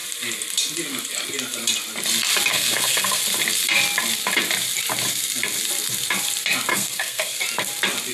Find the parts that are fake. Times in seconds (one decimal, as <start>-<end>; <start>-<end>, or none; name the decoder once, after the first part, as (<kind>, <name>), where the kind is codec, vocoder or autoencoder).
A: 2.5-3.2 (codec, SNAC); 6.7-7.4